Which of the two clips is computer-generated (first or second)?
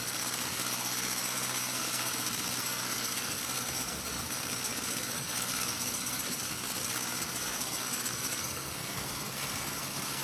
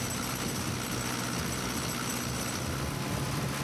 first